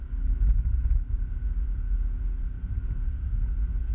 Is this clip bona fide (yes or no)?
yes